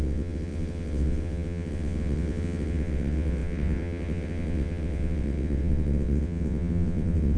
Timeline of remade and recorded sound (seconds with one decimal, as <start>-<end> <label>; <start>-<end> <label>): 0.0-7.4 remade